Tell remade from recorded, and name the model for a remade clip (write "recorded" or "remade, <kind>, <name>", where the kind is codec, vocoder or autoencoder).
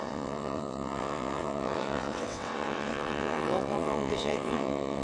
remade, vocoder, WaveNeXt